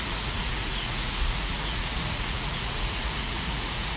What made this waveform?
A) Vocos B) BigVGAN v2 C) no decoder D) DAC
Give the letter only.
A